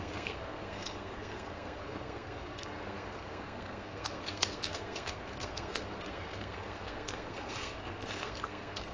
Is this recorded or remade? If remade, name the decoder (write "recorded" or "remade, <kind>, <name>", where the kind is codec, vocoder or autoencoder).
remade, codec, SNAC